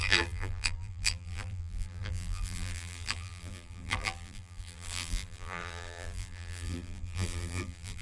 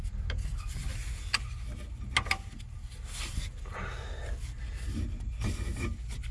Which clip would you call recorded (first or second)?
second